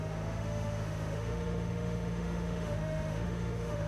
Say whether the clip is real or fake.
fake